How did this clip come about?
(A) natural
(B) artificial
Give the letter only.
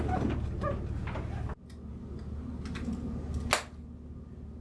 A